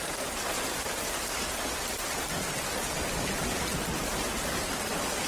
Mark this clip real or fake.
real